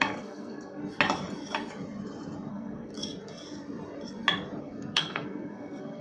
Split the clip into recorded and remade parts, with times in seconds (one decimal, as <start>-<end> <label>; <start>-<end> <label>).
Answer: 0.0-0.8 remade; 0.8-2.5 recorded; 2.5-2.9 remade; 2.9-4.6 recorded; 4.6-6.0 remade